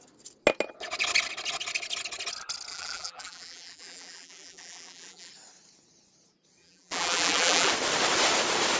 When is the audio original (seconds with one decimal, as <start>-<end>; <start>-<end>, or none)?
0.0-2.7; 5.3-6.6; 7.7-8.8